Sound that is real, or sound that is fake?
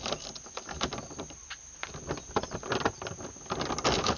real